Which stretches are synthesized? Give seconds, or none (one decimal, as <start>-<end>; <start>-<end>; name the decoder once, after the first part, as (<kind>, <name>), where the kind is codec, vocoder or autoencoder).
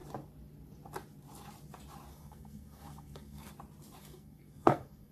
2.1-3.5 (codec, SNAC); 4.0-5.1